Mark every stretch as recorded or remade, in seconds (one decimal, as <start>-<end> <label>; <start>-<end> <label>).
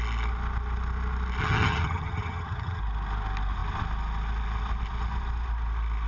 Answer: 0.0-1.4 recorded; 1.4-2.8 remade; 2.8-6.1 recorded